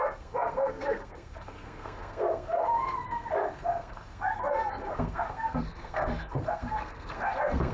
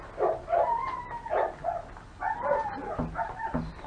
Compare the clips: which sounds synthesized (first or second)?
first